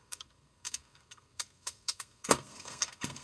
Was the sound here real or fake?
fake